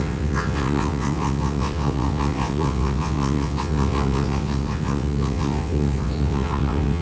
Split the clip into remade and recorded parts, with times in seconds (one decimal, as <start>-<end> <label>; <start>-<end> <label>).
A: 0.0-7.0 remade